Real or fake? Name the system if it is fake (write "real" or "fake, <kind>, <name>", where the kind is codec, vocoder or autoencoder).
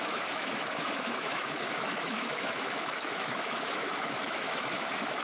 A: fake, autoencoder, DAC-VAE